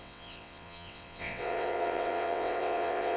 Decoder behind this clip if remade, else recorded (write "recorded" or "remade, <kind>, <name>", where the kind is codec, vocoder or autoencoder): remade, vocoder, WaveNeXt